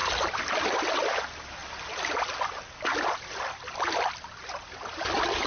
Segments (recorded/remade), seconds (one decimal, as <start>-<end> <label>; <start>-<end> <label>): 0.0-5.5 recorded